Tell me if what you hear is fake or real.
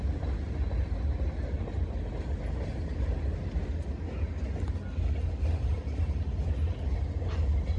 real